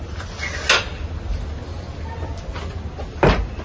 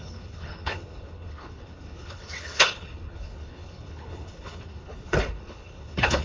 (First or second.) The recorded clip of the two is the first